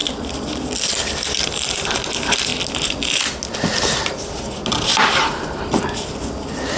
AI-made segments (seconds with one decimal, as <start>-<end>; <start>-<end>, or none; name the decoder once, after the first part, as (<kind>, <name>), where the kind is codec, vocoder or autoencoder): 0.0-1.5 (vocoder, BigVGAN v2); 4.9-5.8